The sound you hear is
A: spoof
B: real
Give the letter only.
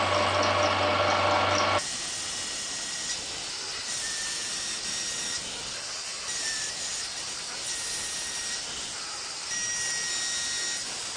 B